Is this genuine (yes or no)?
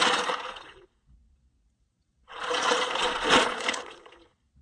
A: no